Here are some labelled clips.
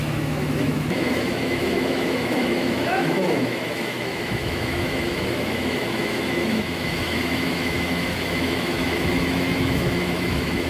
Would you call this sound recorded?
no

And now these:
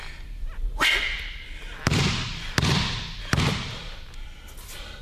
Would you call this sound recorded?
yes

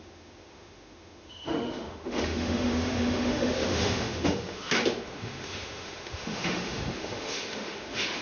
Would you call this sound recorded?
no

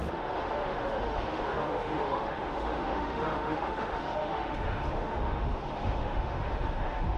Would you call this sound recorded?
no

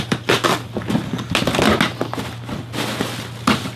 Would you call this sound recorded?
yes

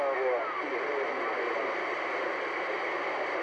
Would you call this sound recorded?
yes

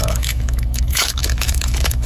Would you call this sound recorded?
no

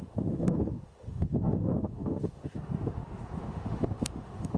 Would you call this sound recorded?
no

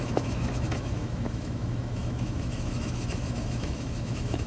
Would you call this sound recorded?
no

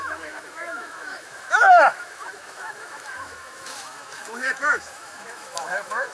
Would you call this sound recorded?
no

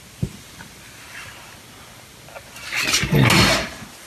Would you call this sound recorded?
yes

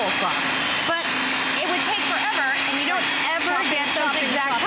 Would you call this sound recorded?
yes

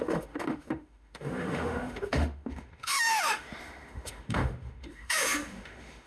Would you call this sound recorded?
no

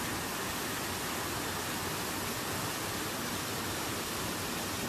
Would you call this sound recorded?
yes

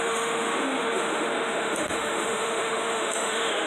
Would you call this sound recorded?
no